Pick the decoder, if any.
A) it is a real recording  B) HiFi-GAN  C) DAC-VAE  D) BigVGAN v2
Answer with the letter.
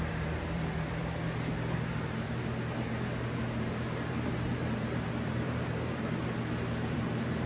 D